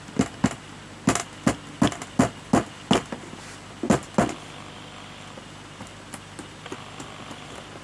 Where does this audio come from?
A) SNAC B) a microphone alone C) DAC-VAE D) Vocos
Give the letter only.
B